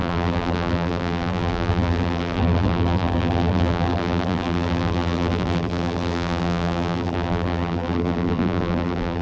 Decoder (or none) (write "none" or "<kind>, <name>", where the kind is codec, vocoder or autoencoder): vocoder, BigVGAN v2